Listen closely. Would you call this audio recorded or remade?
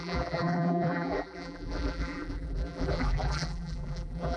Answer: remade